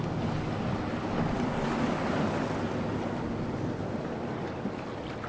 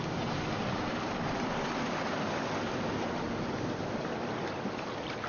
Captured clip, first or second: first